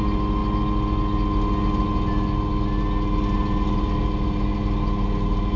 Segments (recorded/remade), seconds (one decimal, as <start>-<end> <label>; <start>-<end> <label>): 0.0-5.6 recorded